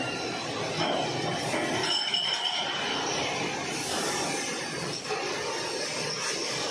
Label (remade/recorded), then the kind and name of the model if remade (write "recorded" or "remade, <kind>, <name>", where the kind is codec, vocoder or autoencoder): recorded